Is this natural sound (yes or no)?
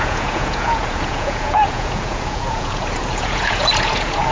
no